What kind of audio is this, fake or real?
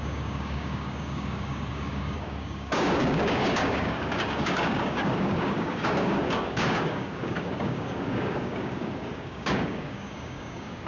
fake